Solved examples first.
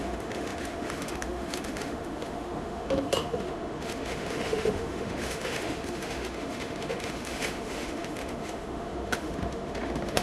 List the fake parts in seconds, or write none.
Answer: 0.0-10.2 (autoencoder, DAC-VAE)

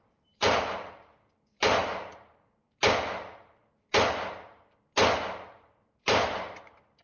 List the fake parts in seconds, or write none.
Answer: 0.0-1.8 (vocoder, BigVGAN v2); 6.0-7.0

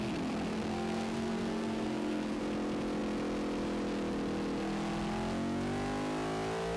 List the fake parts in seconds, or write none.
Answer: 0.5-2.4 (codec, SNAC)